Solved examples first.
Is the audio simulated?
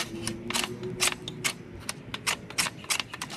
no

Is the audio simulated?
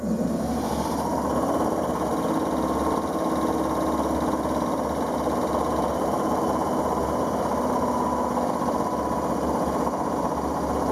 no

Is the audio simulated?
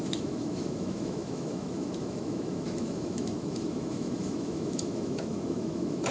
yes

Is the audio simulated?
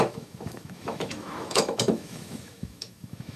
yes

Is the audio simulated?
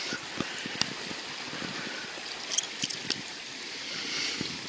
no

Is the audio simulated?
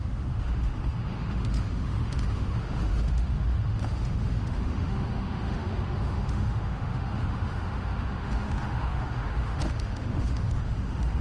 yes